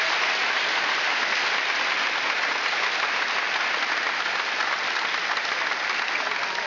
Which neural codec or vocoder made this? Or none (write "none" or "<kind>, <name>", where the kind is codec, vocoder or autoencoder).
none